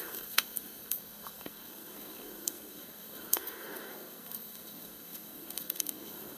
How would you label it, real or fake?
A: fake